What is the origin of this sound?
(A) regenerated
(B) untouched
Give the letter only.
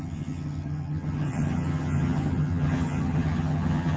A